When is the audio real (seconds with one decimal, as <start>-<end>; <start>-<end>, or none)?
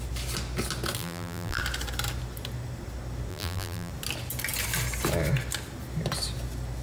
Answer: 0.0-1.0; 1.6-3.3; 3.9-6.8